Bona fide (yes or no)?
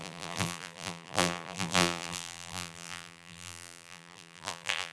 no